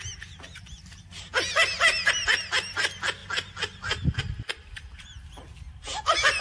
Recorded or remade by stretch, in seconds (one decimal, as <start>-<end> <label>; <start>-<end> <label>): 0.0-6.4 recorded